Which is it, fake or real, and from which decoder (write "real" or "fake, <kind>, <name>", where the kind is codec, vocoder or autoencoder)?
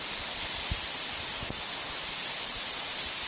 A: real